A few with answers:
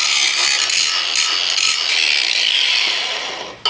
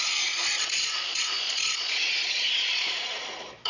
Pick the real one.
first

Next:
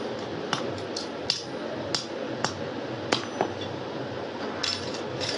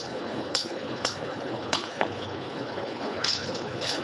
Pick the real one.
first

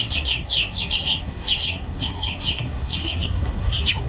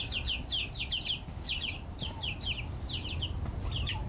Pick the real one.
second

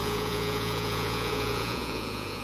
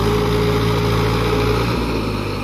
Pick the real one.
second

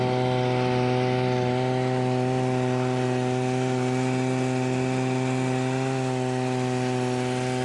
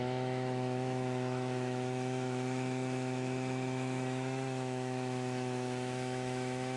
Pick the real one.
first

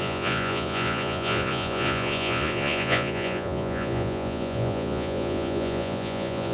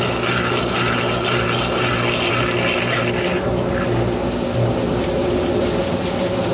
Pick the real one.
second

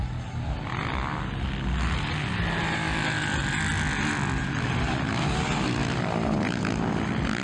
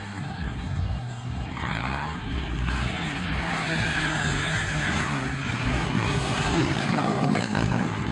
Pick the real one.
first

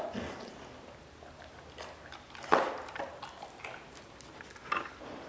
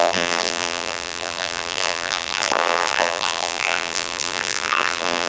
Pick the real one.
first